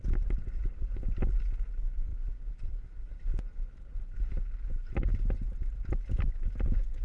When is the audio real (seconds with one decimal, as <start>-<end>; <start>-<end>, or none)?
0.0-7.0